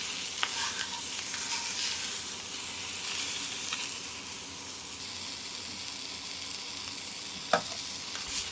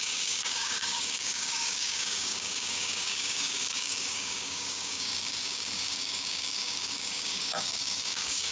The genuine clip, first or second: first